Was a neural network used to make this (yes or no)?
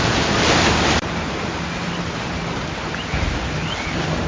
no